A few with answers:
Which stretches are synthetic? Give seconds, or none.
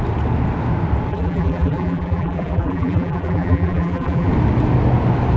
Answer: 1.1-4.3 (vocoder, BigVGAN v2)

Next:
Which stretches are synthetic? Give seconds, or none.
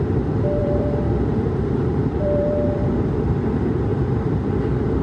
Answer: 0.6-2.9 (vocoder, BigVGAN v2); 3.9-4.5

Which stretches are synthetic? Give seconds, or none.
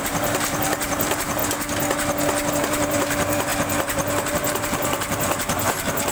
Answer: 0.0-1.4 (vocoder, BigVGAN v2); 2.5-3.5; 4.3-6.1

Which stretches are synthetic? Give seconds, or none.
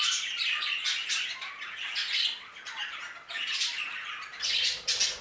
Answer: none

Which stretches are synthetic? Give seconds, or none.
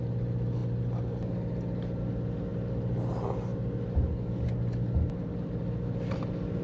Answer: none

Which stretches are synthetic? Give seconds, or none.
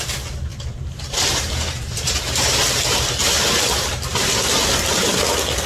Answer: 0.5-2.5 (vocoder, BigVGAN v2)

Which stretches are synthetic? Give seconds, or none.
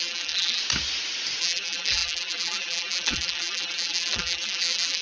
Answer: 0.0-0.6 (vocoder, BigVGAN v2); 1.4-5.0